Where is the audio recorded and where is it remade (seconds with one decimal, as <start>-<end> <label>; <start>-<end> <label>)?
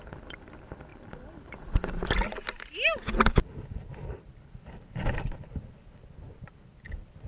0.0-0.9 recorded; 0.9-1.6 remade; 1.6-7.3 recorded